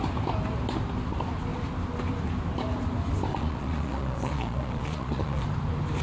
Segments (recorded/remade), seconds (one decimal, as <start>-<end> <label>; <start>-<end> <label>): 0.0-3.3 recorded; 3.3-5.4 remade; 5.4-6.0 recorded